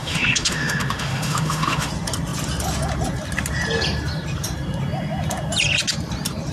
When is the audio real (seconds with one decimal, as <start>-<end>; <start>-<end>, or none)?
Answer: 1.9-6.5